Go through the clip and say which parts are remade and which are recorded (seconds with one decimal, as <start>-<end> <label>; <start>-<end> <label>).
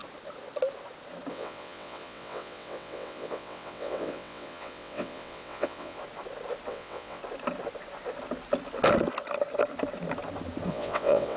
0.0-1.3 recorded; 1.3-6.0 remade; 6.0-6.7 recorded; 6.7-7.2 remade; 7.2-10.7 recorded; 10.7-11.4 remade